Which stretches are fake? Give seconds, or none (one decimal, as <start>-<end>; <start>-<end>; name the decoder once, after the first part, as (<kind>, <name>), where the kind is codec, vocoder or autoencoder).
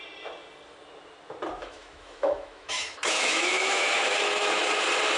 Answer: 1.6-4.7 (autoencoder, DAC-VAE)